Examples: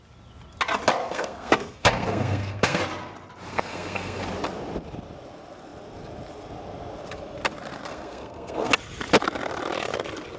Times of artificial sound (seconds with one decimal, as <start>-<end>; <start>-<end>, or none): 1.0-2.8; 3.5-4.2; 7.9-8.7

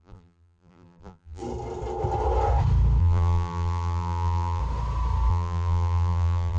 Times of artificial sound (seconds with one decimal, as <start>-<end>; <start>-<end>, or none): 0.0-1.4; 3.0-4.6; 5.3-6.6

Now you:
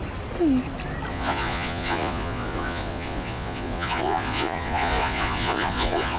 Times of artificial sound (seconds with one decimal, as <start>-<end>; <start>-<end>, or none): 1.1-6.2

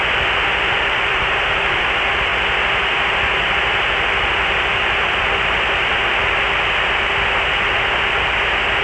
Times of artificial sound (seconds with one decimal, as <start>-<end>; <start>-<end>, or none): 1.1-1.8

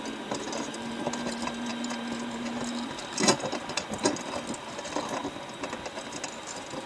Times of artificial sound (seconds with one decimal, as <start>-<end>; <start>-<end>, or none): none